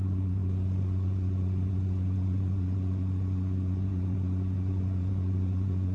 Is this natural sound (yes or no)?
no